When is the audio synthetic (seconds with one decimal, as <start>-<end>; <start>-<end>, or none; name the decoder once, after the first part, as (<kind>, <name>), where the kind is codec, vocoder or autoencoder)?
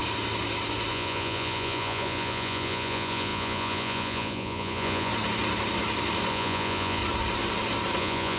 0.9-5.1 (vocoder, Vocos); 6.3-7.0; 8.0-8.4